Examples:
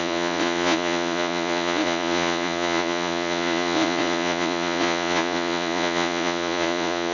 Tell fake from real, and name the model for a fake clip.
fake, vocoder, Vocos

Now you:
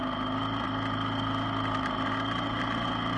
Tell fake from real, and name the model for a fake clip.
real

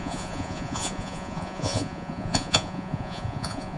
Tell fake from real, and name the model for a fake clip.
fake, vocoder, Vocos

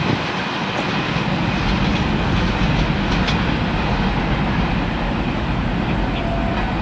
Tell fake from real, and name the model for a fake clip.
real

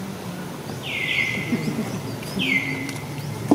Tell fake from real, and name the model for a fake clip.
real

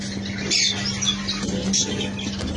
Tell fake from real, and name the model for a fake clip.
real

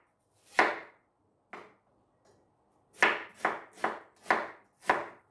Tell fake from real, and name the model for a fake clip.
real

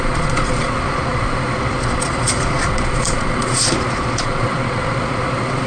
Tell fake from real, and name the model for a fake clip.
fake, vocoder, Vocos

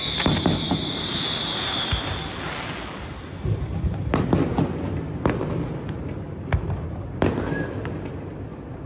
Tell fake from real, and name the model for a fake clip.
real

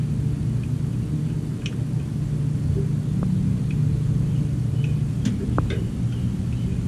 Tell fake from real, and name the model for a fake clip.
real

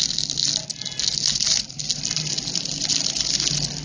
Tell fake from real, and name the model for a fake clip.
real